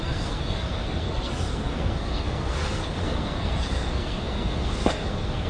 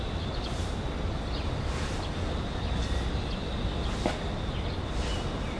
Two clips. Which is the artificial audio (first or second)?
first